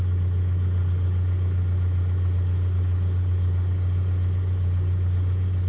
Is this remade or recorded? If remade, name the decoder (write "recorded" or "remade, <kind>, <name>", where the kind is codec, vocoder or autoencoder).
recorded